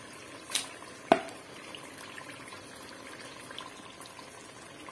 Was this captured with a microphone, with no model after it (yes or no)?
yes